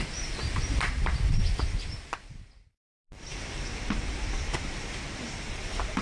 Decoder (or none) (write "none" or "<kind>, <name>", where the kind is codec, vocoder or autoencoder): vocoder, BigVGAN v2